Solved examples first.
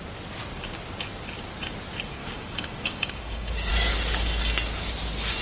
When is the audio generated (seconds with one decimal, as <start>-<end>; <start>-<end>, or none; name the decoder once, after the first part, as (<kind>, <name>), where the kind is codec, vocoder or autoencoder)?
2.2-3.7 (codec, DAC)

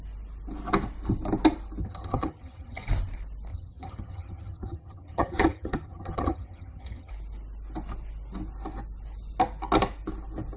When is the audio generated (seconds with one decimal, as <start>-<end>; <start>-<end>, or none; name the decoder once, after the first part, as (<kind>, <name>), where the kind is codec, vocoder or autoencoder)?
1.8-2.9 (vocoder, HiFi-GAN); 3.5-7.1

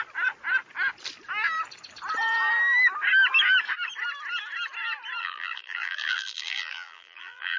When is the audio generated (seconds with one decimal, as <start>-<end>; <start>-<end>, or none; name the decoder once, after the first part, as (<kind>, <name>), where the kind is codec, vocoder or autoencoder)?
5.2-7.6 (vocoder, BigVGAN v2)

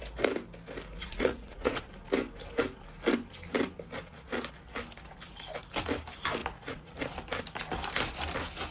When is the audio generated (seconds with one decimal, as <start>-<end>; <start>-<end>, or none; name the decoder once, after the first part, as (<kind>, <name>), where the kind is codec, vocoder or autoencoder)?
1.0-1.9 (vocoder, Vocos); 6.4-7.0

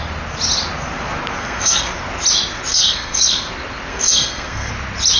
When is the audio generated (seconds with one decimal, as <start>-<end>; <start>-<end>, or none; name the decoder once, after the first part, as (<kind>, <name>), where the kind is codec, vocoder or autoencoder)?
1.4-1.9 (codec, SNAC); 2.7-3.5; 3.9-4.7

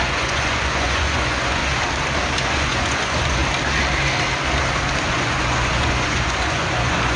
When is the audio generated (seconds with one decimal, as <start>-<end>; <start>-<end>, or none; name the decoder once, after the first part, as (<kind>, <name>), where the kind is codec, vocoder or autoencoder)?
0.0-1.6 (vocoder, Vocos); 2.4-3.4; 5.1-7.2

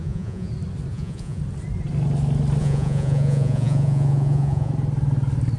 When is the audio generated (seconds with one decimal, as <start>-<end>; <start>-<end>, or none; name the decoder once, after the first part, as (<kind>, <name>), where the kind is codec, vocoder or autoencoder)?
0.0-0.5 (vocoder, Vocos); 0.9-1.4; 2.6-4.7